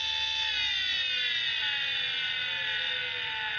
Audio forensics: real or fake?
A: real